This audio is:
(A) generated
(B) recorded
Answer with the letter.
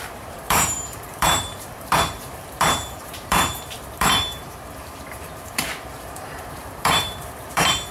A